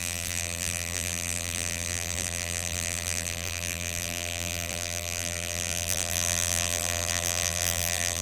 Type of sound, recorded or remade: remade